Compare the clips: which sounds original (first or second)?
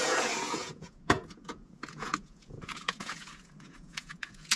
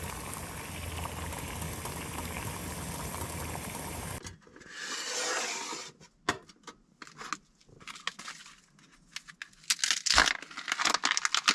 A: second